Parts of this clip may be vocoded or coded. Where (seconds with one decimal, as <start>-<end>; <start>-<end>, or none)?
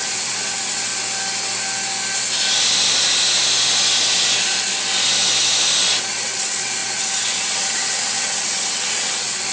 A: 0.0-0.9; 6.0-9.5